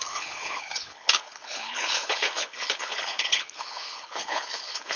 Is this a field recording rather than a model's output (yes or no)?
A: no